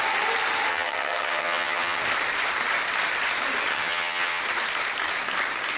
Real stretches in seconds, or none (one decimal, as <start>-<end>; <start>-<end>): 0.0-0.7; 2.0-3.7; 4.4-5.8